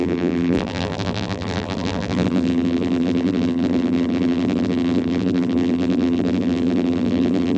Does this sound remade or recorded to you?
remade